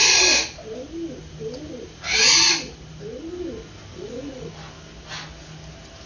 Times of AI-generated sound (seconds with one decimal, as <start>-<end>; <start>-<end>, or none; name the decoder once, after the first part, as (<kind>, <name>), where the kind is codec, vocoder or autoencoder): 3.9-4.5 (vocoder, Vocos)